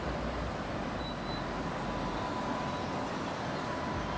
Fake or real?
real